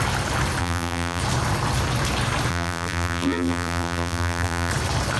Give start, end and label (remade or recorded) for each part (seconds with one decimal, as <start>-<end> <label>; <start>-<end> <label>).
0.0-0.6 recorded; 0.6-1.2 remade; 1.2-2.5 recorded; 2.5-4.7 remade; 4.7-5.2 recorded